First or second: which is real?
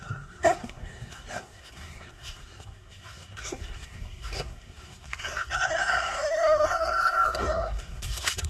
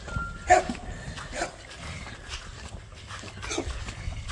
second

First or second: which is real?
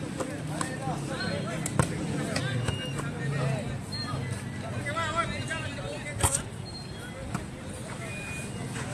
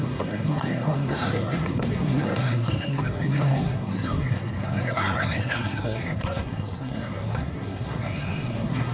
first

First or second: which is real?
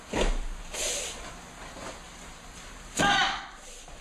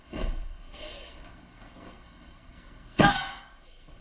first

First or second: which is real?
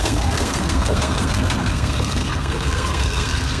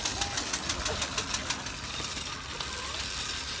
second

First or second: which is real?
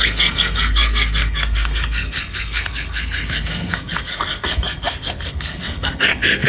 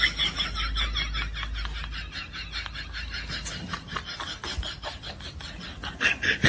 second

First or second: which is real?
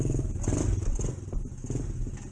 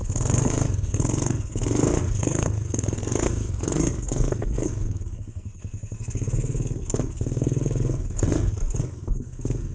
first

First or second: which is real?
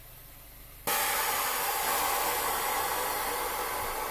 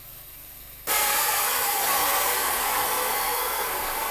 first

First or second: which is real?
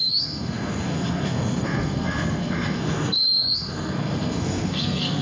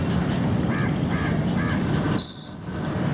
second